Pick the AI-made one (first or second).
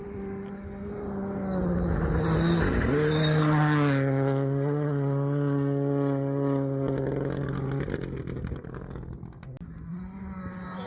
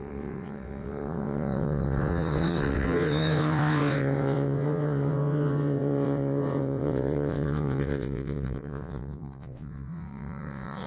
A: second